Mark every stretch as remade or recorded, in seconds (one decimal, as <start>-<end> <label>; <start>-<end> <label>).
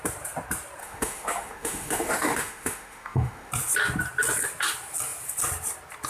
0.0-0.8 recorded; 0.8-3.5 remade; 3.5-6.1 recorded